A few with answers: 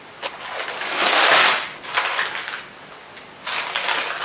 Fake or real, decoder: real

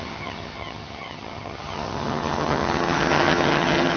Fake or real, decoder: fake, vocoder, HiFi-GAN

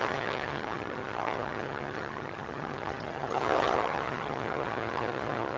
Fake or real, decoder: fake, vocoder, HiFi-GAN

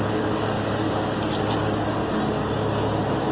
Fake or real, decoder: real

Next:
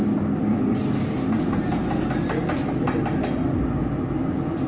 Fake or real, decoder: real